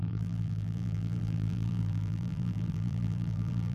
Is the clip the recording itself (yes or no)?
no